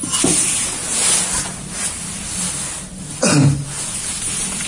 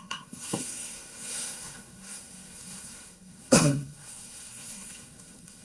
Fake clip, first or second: second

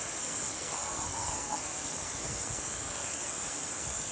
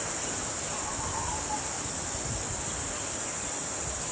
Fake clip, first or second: first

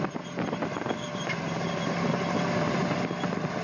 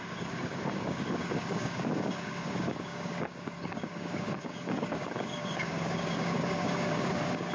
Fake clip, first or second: second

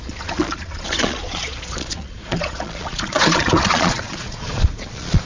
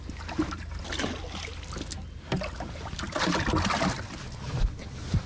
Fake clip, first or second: first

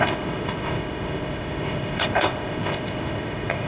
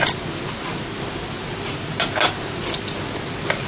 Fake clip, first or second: first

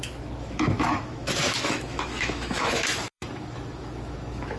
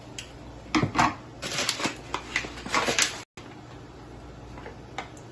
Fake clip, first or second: first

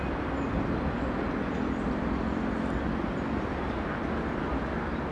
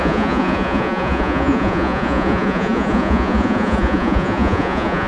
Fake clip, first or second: second